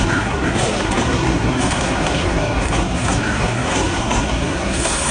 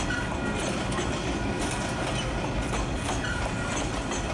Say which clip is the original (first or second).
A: second